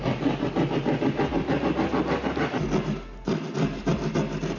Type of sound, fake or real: real